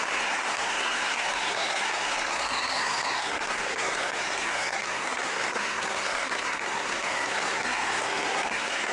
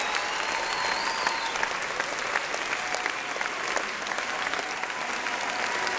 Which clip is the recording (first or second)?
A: second